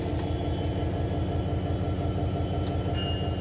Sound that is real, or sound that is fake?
real